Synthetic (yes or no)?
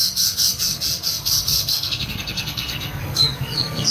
yes